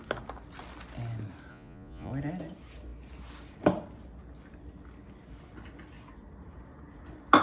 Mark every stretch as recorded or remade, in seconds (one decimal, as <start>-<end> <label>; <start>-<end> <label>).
0.0-1.5 recorded; 1.5-2.1 remade; 2.1-7.4 recorded